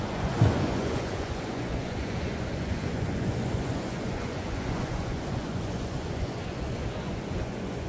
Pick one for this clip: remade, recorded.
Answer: remade